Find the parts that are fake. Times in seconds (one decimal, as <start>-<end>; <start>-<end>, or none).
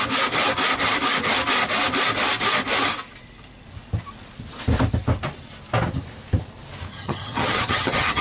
6.9-8.2